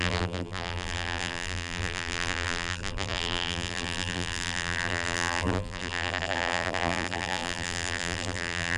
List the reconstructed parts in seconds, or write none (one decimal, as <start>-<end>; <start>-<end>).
0.0-8.8